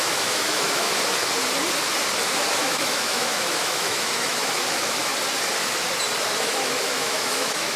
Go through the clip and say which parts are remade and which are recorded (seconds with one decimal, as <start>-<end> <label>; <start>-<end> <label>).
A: 0.0-0.9 remade; 0.9-2.6 recorded; 2.6-5.1 remade; 5.1-6.4 recorded; 6.4-7.8 remade